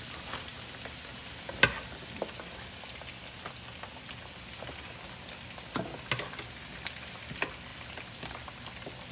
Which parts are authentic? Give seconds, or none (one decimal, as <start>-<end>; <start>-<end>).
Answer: 0.0-9.1

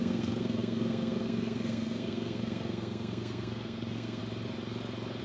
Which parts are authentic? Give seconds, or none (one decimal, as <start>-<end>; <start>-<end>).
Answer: 4.2-5.2

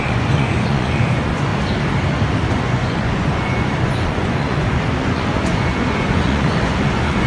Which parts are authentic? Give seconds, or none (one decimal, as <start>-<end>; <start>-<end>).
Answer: 1.5-2.5